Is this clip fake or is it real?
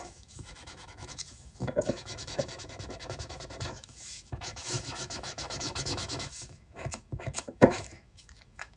fake